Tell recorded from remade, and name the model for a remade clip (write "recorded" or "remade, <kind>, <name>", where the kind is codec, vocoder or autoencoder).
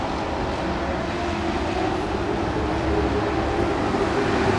recorded